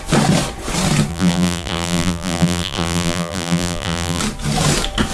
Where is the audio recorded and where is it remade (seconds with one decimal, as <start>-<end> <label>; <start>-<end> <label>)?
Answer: 0.0-1.1 recorded; 1.1-4.2 remade; 4.2-5.1 recorded